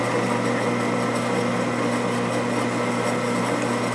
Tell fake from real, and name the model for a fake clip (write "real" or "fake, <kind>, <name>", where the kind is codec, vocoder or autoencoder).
real